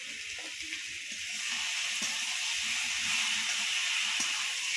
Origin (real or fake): real